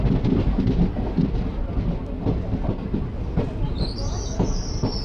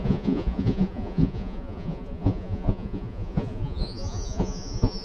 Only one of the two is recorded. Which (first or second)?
first